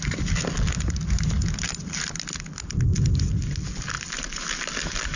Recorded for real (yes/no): yes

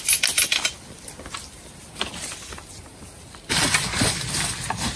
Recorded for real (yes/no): yes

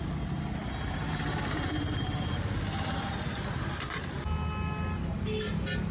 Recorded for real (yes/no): yes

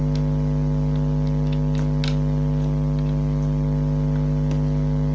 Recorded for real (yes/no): yes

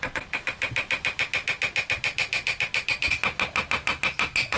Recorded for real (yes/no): yes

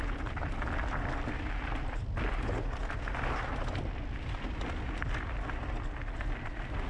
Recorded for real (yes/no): yes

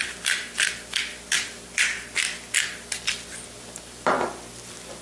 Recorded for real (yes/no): yes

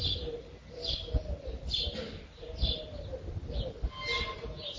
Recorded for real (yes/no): yes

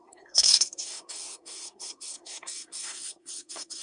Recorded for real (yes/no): no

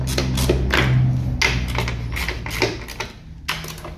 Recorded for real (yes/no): yes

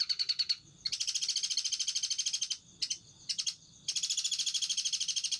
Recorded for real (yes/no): yes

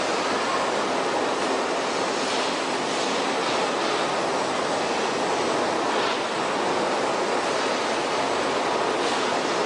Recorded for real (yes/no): yes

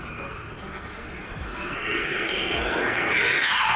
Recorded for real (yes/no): no